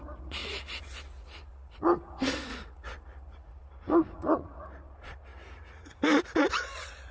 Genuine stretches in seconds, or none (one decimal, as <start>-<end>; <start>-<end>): 5.3-6.5